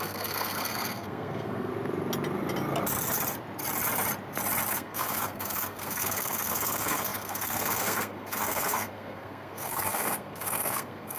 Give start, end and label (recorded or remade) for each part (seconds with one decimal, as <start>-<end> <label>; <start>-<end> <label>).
0.0-1.7 remade; 1.7-4.7 recorded; 4.7-11.2 remade